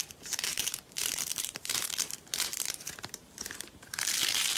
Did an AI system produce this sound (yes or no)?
yes